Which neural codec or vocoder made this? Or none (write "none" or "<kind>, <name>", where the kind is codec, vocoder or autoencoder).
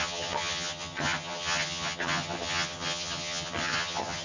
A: vocoder, HiFi-GAN